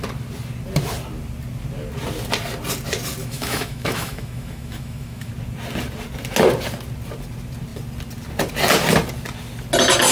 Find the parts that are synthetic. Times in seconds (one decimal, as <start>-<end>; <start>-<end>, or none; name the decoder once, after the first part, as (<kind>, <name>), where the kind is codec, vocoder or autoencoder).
3.2-5.3 (autoencoder, DAC-VAE)